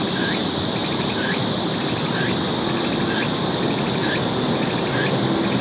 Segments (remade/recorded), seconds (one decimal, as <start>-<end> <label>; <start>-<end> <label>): 0.0-0.8 recorded; 0.8-1.8 remade; 1.8-5.6 recorded